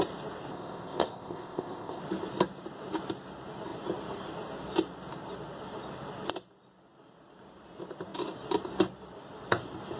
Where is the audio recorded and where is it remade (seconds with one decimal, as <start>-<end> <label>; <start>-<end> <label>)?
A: 0.0-0.5 recorded; 0.5-2.0 remade; 2.0-10.0 recorded